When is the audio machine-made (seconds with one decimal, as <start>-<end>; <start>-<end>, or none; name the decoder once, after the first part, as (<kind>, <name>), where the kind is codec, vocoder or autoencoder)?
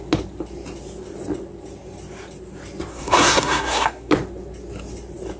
2.9-4.1 (codec, SNAC)